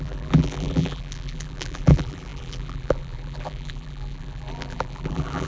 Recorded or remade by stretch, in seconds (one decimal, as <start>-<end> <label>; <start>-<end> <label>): 0.0-5.5 remade